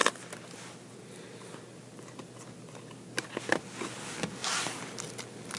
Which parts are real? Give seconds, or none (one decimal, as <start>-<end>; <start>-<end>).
0.0-5.6